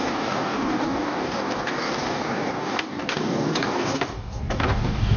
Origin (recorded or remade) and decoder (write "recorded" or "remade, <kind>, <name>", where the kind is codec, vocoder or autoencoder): remade, codec, DAC